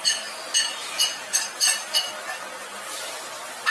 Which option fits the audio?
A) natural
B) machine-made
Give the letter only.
A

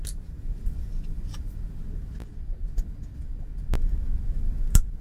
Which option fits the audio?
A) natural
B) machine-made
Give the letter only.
A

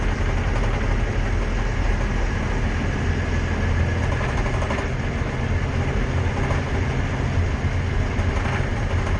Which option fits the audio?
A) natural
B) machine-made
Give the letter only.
A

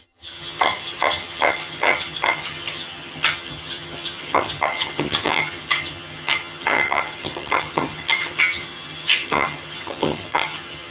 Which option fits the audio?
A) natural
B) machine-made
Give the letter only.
B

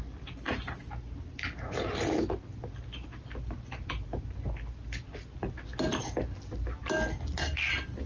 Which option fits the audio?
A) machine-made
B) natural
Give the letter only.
B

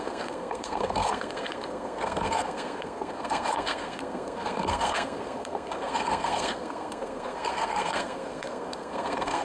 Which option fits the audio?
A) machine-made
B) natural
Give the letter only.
A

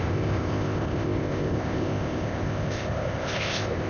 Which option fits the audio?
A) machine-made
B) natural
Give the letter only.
A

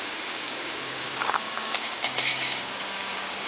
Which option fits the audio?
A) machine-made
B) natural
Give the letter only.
A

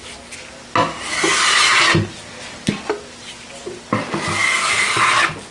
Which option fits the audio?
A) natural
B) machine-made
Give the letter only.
A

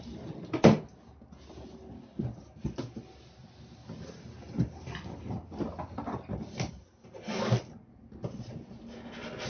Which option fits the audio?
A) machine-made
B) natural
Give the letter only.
B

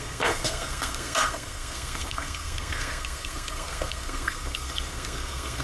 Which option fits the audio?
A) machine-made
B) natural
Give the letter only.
A